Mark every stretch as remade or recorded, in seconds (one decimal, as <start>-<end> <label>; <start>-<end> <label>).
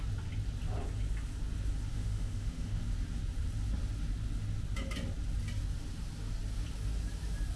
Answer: 0.0-1.9 recorded; 1.9-2.8 remade; 2.8-7.6 recorded